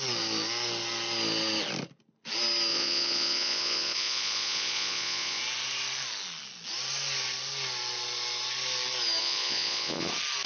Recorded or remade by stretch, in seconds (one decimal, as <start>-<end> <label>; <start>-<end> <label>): 0.0-2.7 recorded; 2.7-5.4 remade; 5.4-9.2 recorded; 9.2-10.1 remade; 10.1-10.5 recorded